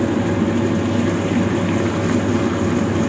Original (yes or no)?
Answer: yes